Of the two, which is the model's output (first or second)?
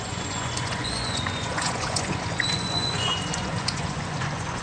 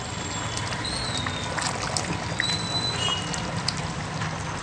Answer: first